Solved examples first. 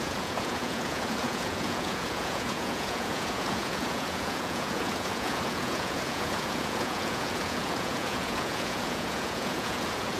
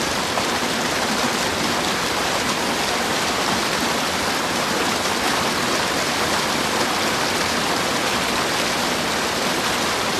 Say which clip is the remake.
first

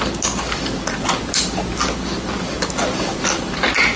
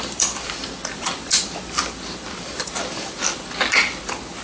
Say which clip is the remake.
second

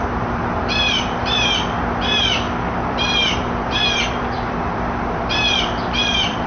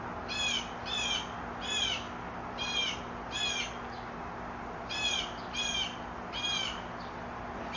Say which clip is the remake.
first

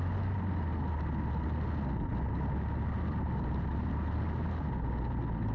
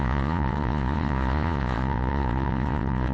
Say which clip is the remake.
second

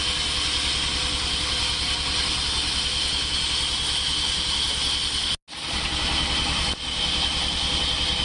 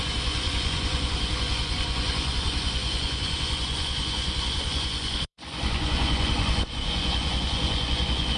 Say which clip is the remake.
second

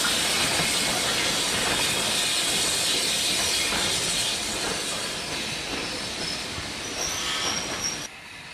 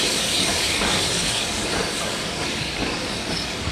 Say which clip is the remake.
second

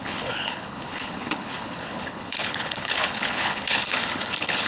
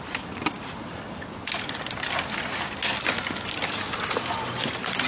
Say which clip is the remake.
first